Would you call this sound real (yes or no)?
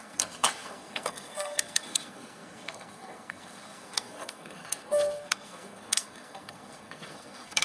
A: no